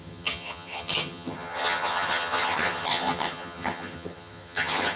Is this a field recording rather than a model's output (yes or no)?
no